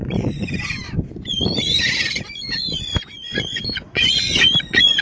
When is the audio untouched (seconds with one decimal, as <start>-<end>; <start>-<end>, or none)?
none